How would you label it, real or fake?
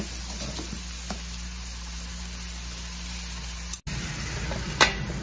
real